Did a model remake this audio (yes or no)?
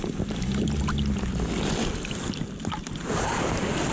no